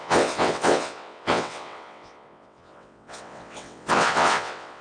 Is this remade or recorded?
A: remade